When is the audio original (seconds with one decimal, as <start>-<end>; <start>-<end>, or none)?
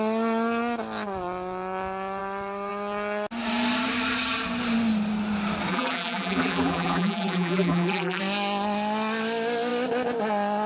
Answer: 0.0-5.7; 8.2-10.7